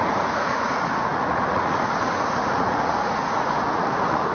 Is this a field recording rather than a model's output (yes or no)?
no